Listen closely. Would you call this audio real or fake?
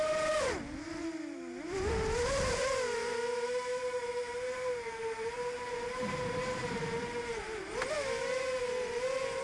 fake